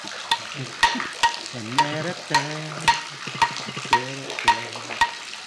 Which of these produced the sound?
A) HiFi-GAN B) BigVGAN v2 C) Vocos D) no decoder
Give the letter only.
D